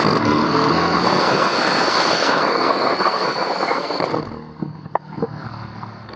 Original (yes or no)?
no